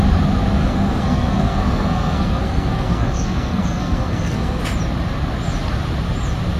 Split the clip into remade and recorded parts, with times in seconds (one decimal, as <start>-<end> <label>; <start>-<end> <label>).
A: 0.0-0.6 recorded; 0.6-4.6 remade; 4.6-6.6 recorded